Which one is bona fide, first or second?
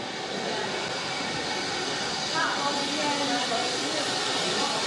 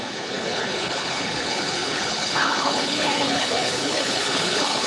first